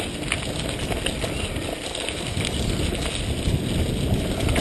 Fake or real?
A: real